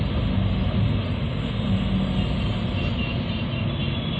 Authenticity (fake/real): real